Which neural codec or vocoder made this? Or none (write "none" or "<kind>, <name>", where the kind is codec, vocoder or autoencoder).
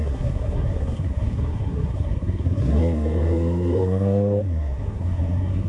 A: codec, SNAC